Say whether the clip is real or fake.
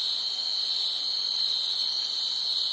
real